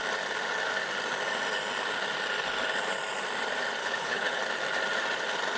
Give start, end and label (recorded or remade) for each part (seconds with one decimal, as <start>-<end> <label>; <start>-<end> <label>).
0.0-3.8 recorded; 3.8-4.4 remade; 4.4-5.6 recorded

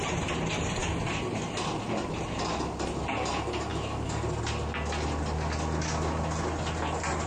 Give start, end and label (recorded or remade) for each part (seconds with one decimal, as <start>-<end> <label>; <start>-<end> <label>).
0.0-7.3 recorded

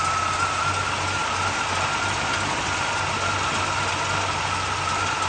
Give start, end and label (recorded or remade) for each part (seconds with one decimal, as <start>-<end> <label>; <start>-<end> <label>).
0.0-5.3 recorded

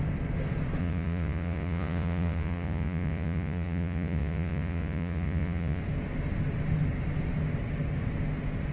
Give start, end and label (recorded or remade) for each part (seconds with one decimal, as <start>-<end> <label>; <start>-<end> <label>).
0.0-0.8 recorded; 0.8-5.8 remade; 5.8-8.7 recorded

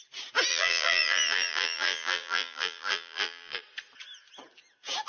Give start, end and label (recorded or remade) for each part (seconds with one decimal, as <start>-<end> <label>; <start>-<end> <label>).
0.0-0.5 recorded; 0.5-3.6 remade; 3.6-5.1 recorded

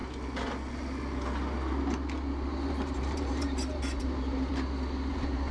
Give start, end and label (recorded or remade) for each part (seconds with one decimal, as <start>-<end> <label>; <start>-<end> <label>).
0.0-2.7 recorded; 2.7-4.5 remade; 4.5-5.1 recorded; 5.1-5.5 remade

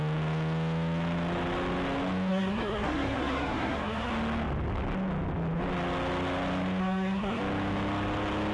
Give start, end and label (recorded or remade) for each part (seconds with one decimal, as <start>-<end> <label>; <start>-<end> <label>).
0.0-2.3 recorded; 2.3-4.1 remade; 4.1-6.8 recorded; 6.8-7.4 remade; 7.4-8.5 recorded

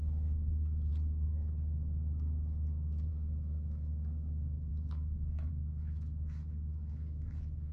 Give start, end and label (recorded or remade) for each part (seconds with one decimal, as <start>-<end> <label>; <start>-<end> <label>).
0.0-0.9 remade; 0.9-3.1 recorded; 3.1-7.7 remade